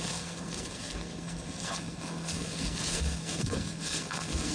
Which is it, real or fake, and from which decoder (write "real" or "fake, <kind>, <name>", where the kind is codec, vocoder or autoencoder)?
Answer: fake, codec, SNAC